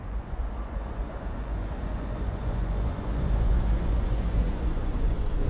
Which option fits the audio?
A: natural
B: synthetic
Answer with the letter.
B